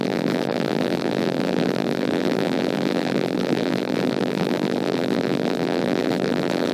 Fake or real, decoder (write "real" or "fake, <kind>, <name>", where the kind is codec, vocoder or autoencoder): fake, vocoder, BigVGAN v2